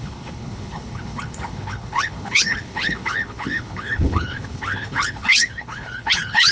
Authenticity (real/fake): fake